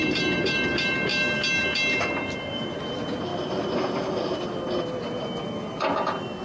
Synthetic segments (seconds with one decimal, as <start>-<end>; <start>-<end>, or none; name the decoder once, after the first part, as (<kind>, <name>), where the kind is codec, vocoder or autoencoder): 0.0-1.1 (vocoder, BigVGAN v2); 2.4-3.3; 4.1-6.4